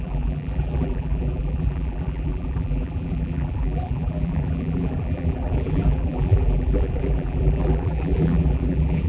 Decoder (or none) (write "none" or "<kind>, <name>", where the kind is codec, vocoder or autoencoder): vocoder, BigVGAN v2